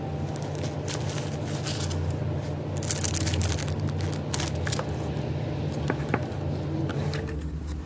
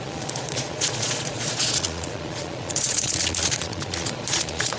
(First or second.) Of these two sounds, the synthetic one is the second